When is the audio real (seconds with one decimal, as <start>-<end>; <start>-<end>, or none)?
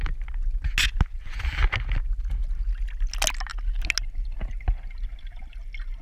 0.0-6.0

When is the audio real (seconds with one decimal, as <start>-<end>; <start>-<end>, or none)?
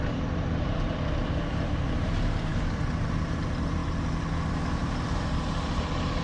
3.8-4.7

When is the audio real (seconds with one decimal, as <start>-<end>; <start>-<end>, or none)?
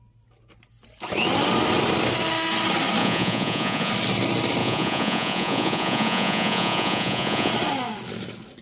0.0-3.0; 3.9-4.6; 7.5-8.6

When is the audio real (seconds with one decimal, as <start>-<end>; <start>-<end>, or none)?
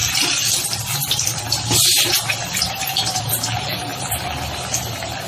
3.2-5.3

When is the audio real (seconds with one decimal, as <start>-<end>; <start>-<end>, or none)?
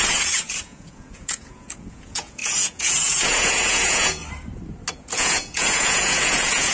4.2-4.9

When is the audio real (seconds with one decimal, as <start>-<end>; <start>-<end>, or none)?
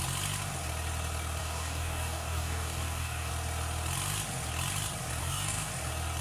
0.0-1.4; 3.3-5.2; 5.7-6.2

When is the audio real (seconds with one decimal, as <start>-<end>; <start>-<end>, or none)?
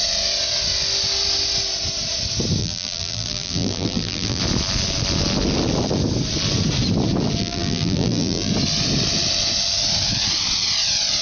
0.0-2.6; 4.4-7.4; 8.5-11.2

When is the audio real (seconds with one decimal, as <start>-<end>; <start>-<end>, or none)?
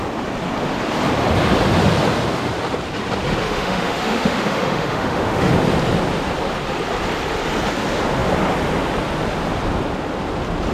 0.0-3.4; 5.5-10.7